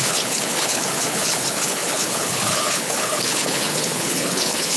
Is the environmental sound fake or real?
fake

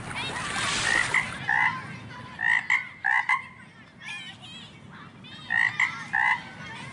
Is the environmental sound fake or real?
real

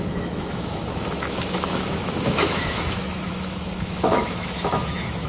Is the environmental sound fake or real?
fake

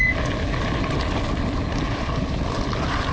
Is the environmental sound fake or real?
real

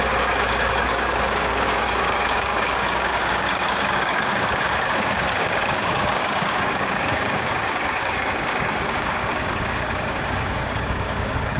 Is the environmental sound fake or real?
fake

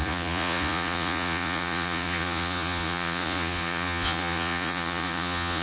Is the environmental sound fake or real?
fake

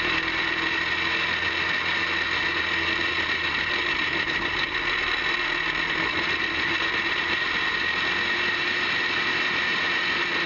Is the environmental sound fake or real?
real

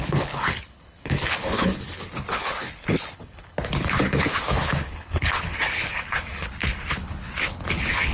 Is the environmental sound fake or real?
fake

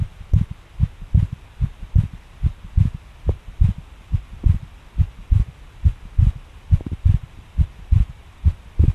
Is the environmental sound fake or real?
fake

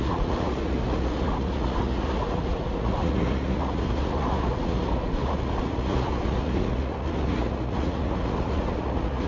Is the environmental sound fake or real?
fake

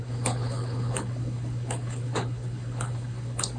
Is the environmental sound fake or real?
fake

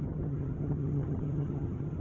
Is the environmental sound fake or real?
fake